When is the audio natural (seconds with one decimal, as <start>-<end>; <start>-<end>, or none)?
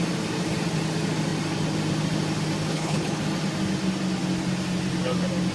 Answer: 0.0-2.7; 3.2-5.5